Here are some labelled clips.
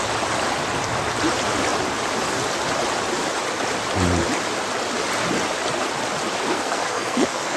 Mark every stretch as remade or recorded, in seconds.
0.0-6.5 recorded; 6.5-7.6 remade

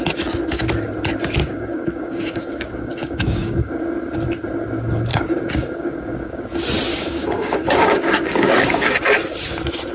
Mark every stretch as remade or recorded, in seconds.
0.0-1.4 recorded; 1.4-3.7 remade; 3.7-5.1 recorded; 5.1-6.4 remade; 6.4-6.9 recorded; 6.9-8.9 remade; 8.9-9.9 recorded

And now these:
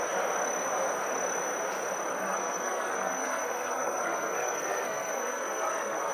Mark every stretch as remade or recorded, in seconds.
0.0-2.1 recorded; 2.1-6.1 remade

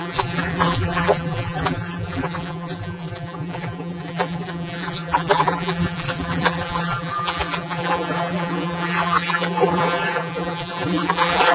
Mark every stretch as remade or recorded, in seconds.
0.0-11.5 remade

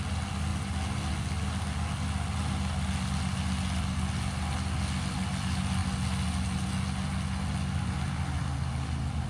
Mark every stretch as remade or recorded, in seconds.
0.0-9.3 recorded

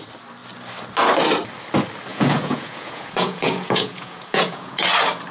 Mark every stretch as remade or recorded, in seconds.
0.0-2.1 recorded; 2.1-4.8 remade; 4.8-5.3 recorded

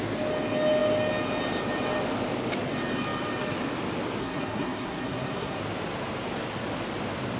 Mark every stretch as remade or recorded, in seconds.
0.0-4.2 recorded; 4.2-5.6 remade; 5.6-7.4 recorded